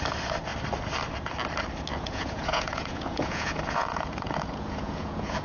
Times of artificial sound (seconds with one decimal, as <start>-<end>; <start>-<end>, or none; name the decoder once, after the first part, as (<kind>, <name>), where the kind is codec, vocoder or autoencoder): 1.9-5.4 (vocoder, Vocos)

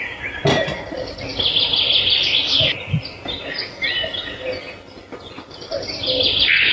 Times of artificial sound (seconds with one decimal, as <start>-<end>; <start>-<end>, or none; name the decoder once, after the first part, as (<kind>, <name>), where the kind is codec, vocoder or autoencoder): none

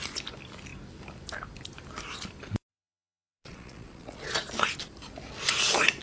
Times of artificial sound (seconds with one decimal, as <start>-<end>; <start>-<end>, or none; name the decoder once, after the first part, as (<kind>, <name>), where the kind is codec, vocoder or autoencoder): 2.7-4.4 (vocoder, Vocos)

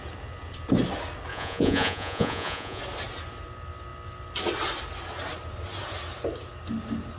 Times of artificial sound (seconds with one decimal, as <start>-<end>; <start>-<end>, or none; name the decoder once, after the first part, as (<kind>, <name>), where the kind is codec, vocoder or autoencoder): 1.3-2.8 (vocoder, Vocos)

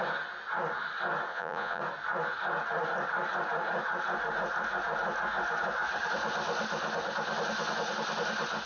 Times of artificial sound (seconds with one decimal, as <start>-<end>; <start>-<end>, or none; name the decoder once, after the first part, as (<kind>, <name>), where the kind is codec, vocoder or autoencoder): 1.3-1.8 (vocoder, Vocos)